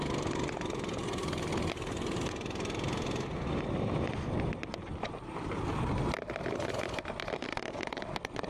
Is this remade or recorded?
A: recorded